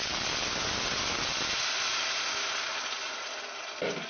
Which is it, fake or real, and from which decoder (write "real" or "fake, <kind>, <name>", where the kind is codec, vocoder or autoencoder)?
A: real